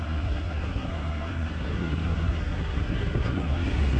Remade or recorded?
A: remade